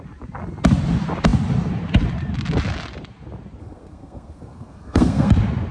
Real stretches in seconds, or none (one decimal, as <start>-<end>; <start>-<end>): 0.0-3.6; 5.3-5.7